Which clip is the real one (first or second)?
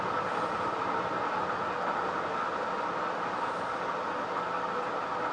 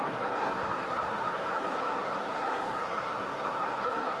first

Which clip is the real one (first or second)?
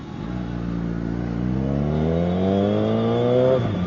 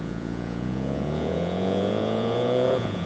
first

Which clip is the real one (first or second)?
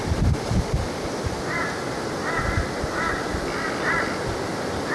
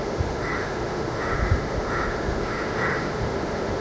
first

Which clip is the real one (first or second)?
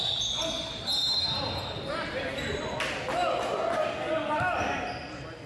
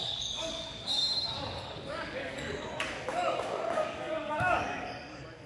first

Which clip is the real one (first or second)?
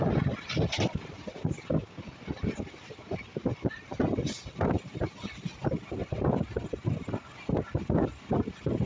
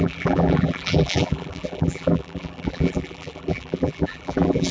first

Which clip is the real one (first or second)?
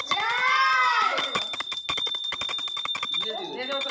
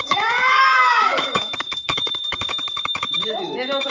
first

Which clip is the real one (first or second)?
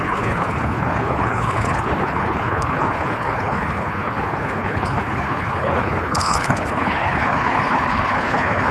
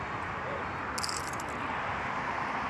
second